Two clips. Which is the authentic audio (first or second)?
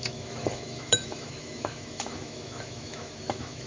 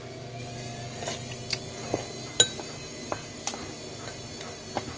second